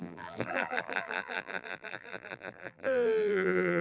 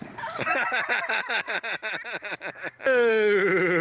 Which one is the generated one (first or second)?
first